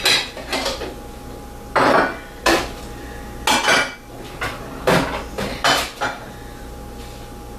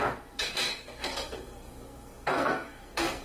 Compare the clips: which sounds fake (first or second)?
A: second